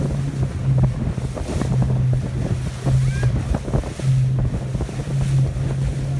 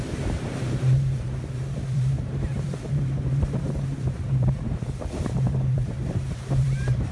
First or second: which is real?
first